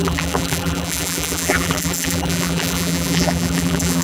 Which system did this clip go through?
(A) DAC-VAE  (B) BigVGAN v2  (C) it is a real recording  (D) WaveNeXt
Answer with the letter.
B